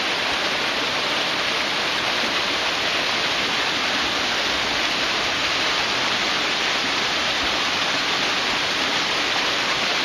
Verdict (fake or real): real